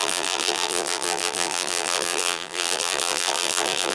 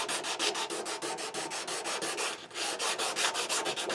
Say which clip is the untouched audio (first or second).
second